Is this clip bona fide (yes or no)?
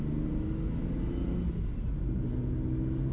yes